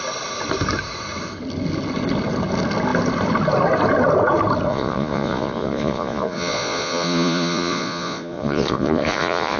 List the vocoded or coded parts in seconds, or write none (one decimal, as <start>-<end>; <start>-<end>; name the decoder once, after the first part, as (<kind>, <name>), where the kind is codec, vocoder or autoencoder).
4.7-9.6 (vocoder, Vocos)